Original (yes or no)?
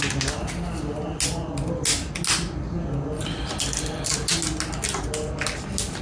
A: yes